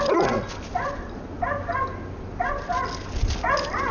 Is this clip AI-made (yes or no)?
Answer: no